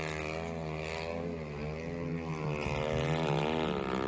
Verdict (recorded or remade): recorded